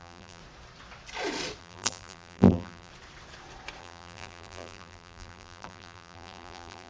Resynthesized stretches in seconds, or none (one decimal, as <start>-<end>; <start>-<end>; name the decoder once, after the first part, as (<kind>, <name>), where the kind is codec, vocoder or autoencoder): 0.0-0.4 (vocoder, BigVGAN v2); 1.6-2.9; 3.8-6.9

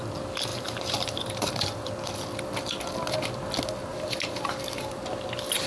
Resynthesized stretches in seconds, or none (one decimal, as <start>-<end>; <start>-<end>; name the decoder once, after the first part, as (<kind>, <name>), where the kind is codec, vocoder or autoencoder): 0.5-1.9 (vocoder, BigVGAN v2); 3.9-4.9

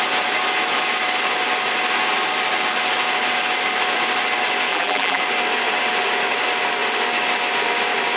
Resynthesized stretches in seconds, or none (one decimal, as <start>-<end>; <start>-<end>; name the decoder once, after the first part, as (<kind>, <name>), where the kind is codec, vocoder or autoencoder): 4.7-5.2 (vocoder, BigVGAN v2)

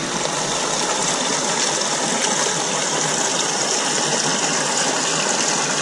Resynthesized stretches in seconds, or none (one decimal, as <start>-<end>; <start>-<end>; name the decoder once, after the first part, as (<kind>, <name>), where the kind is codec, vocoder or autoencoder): 1.0-1.6 (vocoder, BigVGAN v2); 3.3-3.8

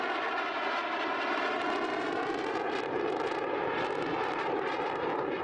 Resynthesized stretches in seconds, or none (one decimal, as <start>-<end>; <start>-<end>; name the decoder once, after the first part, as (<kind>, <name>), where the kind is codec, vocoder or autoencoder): 1.9-5.4 (vocoder, BigVGAN v2)

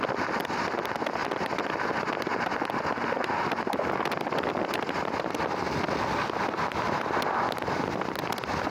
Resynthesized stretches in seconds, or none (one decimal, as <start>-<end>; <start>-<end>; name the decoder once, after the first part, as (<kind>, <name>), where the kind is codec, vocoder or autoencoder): none